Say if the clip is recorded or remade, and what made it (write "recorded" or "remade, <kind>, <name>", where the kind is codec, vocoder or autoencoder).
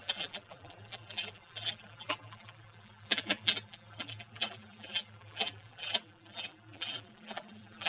remade, vocoder, BigVGAN v2